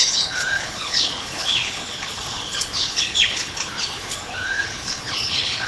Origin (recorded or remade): remade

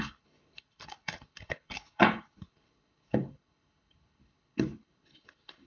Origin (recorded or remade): remade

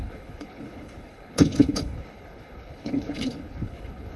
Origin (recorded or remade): remade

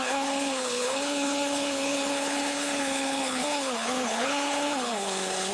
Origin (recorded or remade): remade